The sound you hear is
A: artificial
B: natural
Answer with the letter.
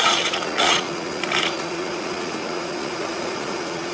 A